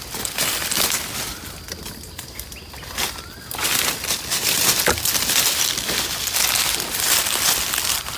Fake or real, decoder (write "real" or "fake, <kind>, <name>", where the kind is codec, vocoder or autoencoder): real